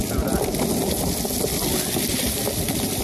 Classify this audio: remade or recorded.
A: recorded